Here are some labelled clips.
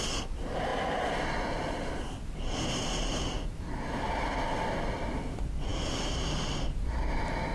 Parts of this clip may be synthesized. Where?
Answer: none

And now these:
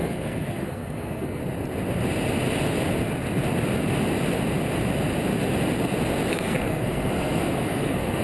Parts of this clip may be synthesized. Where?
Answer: 0.0-1.4 (codec, SNAC); 6.3-8.2

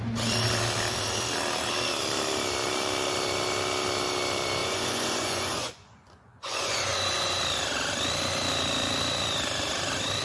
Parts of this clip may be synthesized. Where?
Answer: 4.6-7.4 (vocoder, Vocos)

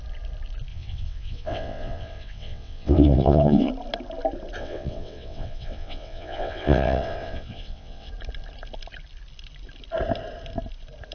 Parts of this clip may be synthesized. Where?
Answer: 0.7-3.7 (vocoder, WaveNeXt); 4.6-8.1

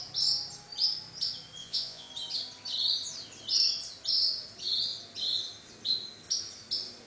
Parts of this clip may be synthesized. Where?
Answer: 1.6-2.1 (vocoder, Vocos)

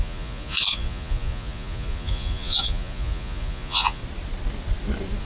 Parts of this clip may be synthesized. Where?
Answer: 0.0-4.0 (vocoder, Vocos)

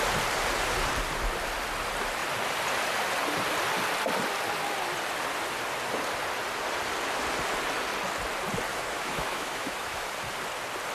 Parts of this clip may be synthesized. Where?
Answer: 8.7-10.1 (autoencoder, DAC-VAE)